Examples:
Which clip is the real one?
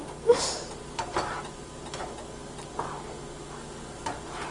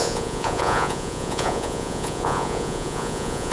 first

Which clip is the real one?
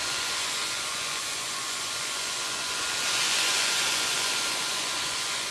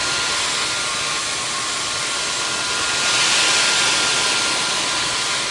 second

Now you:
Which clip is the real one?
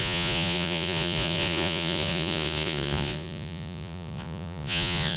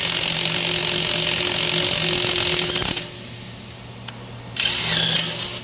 second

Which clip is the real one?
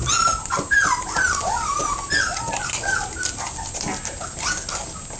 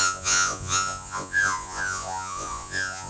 first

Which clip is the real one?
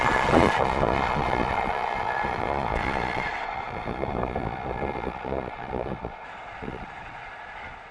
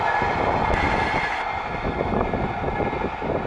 second